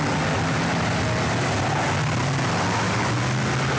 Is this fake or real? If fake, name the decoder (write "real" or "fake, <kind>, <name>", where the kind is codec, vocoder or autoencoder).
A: real